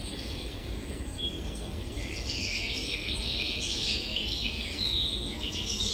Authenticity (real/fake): fake